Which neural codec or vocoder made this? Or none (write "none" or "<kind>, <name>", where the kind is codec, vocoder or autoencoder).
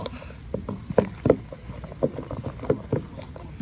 none